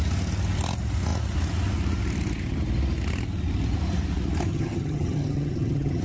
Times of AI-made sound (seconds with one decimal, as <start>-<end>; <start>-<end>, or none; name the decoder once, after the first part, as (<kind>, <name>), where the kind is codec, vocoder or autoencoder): 4.5-6.0 (vocoder, HiFi-GAN)